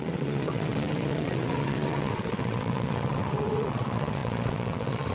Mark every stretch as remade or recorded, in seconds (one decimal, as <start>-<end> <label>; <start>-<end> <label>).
0.0-5.1 remade